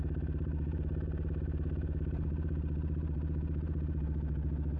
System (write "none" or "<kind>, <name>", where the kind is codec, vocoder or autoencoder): none